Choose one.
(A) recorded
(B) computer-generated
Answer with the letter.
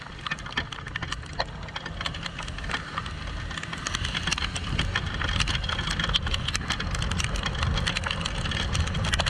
A